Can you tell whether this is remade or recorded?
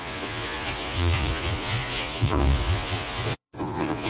remade